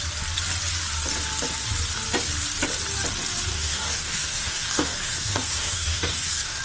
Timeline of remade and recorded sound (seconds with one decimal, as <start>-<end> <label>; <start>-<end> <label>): 0.0-3.5 recorded; 3.5-6.6 remade